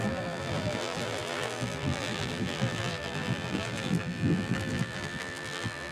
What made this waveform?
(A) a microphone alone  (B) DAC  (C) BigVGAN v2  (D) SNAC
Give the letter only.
C